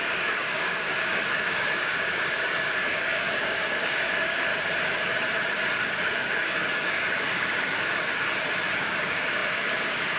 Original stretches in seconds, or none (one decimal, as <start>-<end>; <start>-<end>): 4.5-5.8; 8.1-8.8